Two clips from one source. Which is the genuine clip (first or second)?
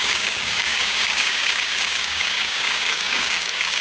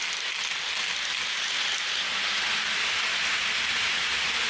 second